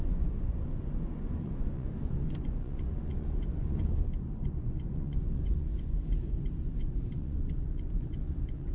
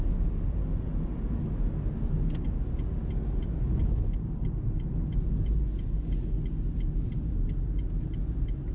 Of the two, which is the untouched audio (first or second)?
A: second